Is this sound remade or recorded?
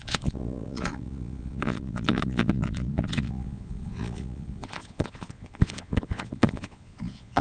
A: remade